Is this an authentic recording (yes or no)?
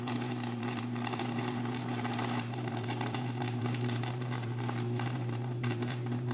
no